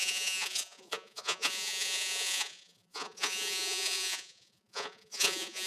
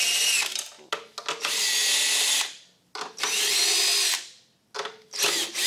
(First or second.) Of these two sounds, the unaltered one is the second